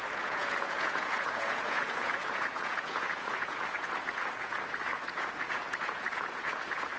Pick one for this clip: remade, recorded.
remade